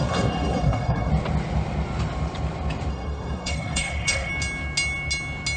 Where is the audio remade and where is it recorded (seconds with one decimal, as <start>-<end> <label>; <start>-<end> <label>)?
0.0-1.1 remade; 1.1-2.9 recorded; 2.9-4.3 remade; 4.3-5.6 recorded